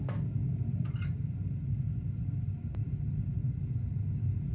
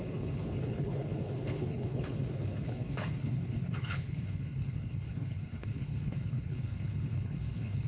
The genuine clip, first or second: first